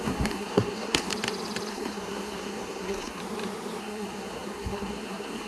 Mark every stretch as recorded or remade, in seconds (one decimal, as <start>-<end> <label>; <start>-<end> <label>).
0.0-1.1 remade; 1.1-1.7 recorded; 1.7-3.2 remade; 3.2-3.8 recorded; 3.8-5.5 remade